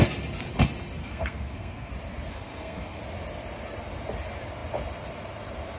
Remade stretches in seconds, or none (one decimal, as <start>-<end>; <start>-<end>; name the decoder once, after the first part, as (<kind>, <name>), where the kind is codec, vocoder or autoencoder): 1.0-1.9 (codec, SNAC); 2.3-3.0